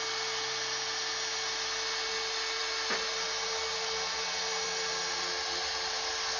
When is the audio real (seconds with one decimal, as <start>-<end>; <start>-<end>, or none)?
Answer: 0.0-6.4